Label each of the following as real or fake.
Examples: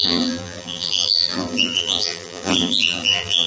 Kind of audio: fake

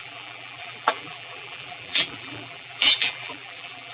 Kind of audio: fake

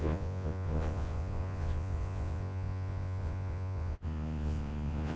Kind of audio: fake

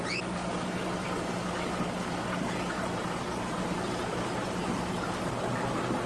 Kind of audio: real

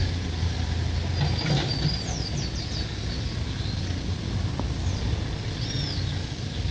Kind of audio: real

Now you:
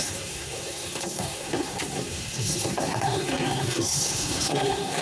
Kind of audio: fake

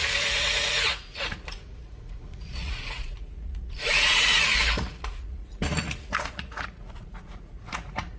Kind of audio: fake